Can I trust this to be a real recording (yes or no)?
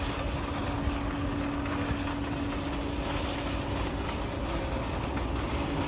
yes